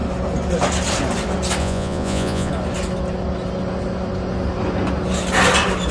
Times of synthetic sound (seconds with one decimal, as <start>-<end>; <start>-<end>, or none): 1.6-2.5